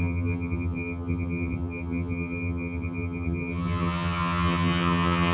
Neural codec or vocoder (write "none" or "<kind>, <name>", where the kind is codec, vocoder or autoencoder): vocoder, HiFi-GAN